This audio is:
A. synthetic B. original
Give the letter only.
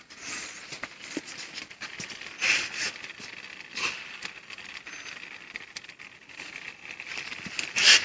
B